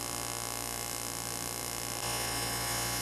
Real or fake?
real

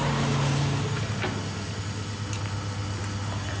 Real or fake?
real